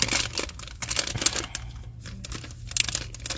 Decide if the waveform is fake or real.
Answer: real